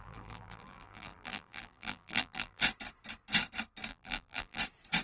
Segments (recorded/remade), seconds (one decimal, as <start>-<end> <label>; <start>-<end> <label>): 0.0-2.6 remade; 2.6-3.9 recorded; 3.9-4.6 remade; 4.6-5.0 recorded